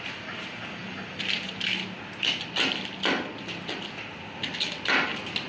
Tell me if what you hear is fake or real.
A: real